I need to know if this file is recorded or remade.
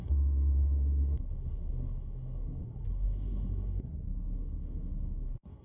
remade